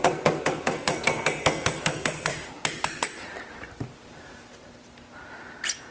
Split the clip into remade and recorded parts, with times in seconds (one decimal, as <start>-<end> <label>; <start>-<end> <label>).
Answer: 0.0-2.3 remade; 2.3-5.9 recorded